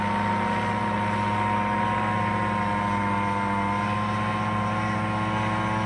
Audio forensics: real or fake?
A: real